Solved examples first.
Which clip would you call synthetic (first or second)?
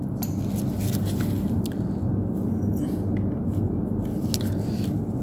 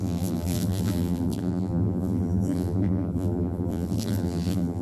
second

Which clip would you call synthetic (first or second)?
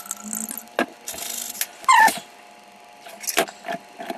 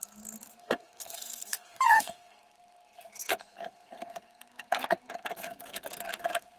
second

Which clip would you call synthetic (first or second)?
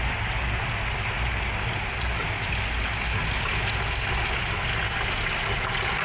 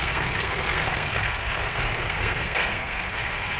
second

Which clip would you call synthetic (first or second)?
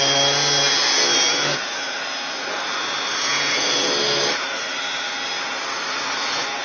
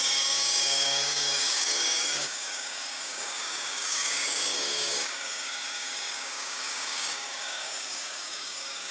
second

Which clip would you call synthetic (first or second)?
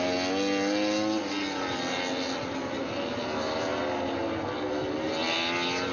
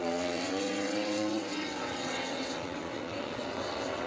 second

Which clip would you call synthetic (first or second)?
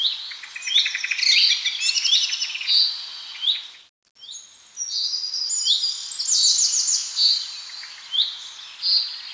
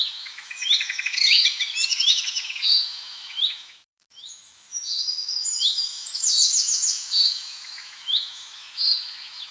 second